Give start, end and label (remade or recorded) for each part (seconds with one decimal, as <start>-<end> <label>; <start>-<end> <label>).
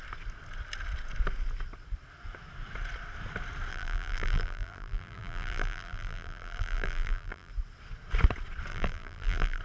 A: 0.0-3.7 recorded; 3.7-7.5 remade; 7.5-8.7 recorded; 8.7-9.6 remade